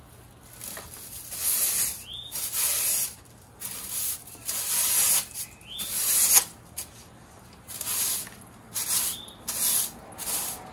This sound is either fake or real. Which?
real